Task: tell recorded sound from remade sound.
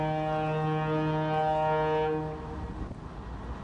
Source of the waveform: recorded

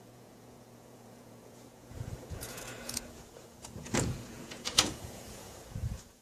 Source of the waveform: remade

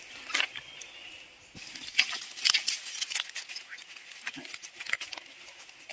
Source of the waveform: recorded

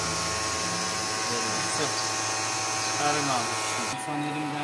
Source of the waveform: recorded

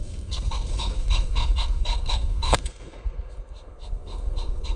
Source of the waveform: remade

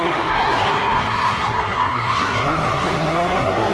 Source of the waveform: remade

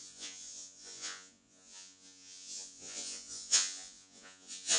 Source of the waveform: remade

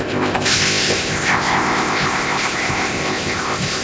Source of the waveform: remade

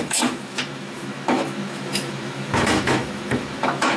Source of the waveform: remade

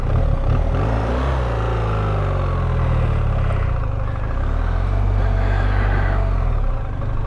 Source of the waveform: recorded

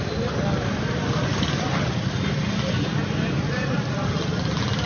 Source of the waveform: recorded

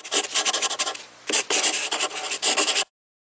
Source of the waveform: recorded